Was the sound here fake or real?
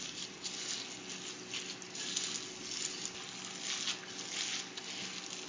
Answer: real